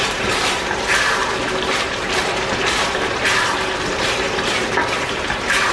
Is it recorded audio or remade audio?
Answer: remade